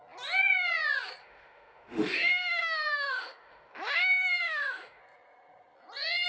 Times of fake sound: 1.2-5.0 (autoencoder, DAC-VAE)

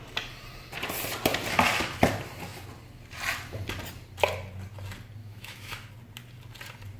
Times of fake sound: 5.2-5.9 (autoencoder, DAC-VAE)

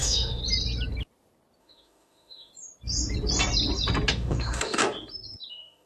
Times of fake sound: 0.0-0.4 (autoencoder, DAC-VAE); 1.6-2.5; 4.1-4.8; 5.5-5.9

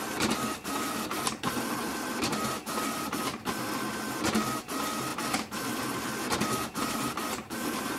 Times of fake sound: none

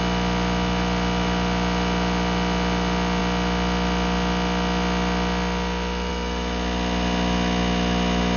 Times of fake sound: none